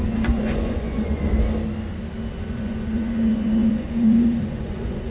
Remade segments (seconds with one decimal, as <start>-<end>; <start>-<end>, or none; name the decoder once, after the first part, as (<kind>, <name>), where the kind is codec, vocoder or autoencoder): 0.0-1.3 (vocoder, Vocos); 2.3-5.1